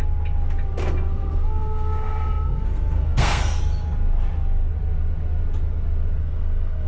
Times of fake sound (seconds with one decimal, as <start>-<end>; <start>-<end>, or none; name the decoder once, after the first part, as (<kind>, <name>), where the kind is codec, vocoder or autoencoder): 0.8-3.6 (codec, SNAC); 6.2-6.9

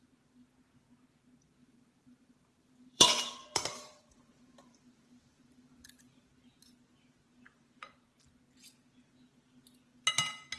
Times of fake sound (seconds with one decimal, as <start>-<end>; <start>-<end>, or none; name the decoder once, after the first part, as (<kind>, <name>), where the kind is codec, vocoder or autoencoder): 1.6-6.3 (vocoder, BigVGAN v2)

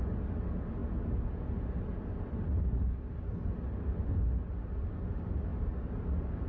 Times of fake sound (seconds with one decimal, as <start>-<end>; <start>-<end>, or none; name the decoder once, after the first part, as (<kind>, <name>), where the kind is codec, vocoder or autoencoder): none

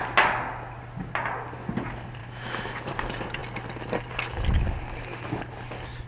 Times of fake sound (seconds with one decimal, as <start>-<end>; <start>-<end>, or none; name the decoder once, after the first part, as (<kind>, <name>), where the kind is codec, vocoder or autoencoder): 2.2-2.9 (autoencoder, DAC-VAE)

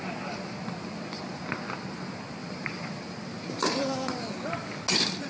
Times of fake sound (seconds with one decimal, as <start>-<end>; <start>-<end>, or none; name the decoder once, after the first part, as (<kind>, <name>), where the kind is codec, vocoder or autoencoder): 2.4-4.3 (vocoder, BigVGAN v2)

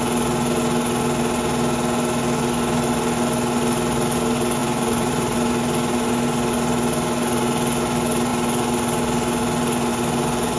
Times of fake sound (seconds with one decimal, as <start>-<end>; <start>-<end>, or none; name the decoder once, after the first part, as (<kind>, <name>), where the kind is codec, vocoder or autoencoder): 4.6-5.5 (vocoder, BigVGAN v2)

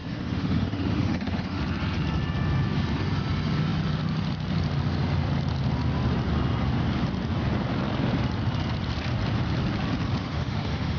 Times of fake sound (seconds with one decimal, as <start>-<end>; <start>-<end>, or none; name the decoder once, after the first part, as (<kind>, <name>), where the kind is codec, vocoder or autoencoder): 0.0-1.6 (autoencoder, DAC-VAE); 10.2-11.0

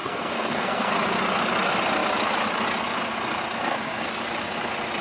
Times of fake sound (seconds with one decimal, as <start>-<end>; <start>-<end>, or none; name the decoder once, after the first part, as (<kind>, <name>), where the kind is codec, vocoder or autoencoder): 0.0-0.9 (codec, SNAC); 3.6-4.1